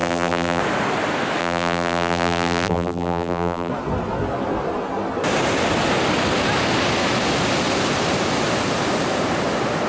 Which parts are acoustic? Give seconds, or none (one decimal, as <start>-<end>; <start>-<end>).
0.6-1.4; 3.7-9.9